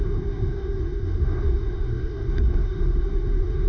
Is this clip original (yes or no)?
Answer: no